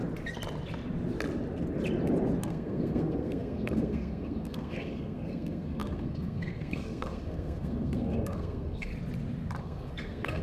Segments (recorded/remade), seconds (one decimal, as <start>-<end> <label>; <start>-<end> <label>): 0.0-2.4 recorded; 2.4-8.9 remade; 8.9-9.6 recorded; 9.6-10.4 remade

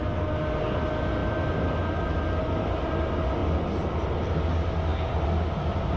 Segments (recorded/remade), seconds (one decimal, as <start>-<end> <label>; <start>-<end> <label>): 0.0-6.0 recorded

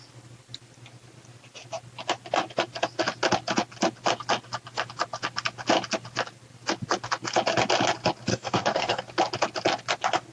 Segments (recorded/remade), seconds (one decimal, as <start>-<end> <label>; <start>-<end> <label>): 0.0-8.3 recorded; 8.3-9.0 remade; 9.0-10.3 recorded

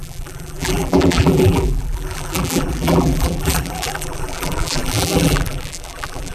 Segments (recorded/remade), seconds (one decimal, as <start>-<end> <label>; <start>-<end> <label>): 0.0-6.3 remade